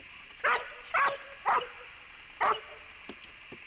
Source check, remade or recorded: recorded